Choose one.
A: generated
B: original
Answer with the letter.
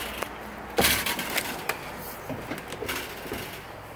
B